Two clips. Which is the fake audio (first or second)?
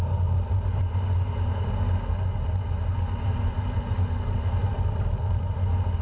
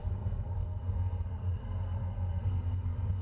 second